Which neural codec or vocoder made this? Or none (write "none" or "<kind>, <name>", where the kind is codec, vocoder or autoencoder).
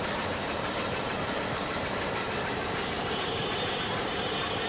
vocoder, BigVGAN v2